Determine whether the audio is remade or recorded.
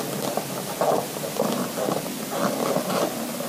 recorded